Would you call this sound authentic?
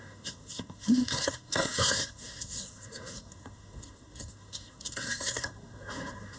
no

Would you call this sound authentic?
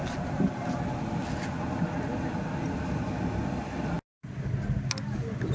yes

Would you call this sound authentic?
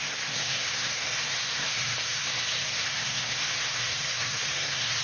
no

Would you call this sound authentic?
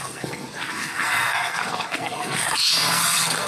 no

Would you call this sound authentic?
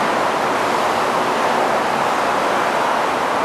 yes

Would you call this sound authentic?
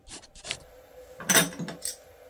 yes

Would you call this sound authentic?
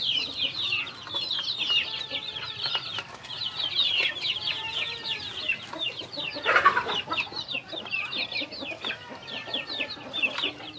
yes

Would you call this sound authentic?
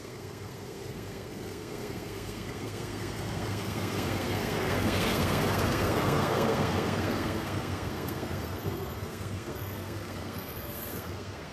no